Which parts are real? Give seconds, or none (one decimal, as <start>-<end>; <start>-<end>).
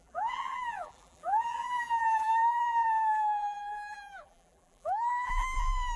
none